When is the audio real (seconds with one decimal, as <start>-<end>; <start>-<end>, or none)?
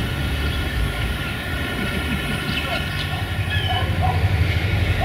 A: 0.0-0.7; 1.5-4.5